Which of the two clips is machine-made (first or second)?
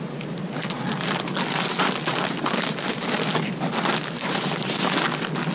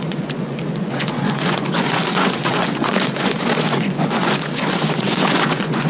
second